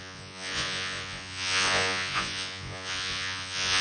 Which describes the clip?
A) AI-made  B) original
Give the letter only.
A